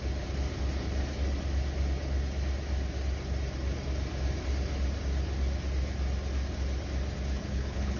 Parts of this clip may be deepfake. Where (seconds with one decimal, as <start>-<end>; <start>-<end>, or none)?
7.4-8.0